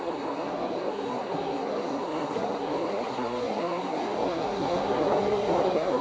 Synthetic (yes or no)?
yes